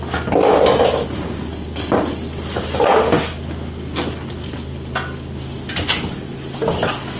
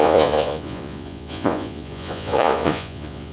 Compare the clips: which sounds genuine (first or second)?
first